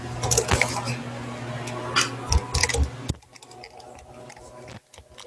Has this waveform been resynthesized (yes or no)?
no